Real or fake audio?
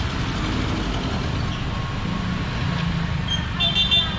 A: real